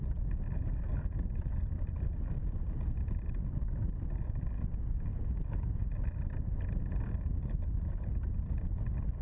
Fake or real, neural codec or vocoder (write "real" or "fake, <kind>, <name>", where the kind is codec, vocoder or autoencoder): real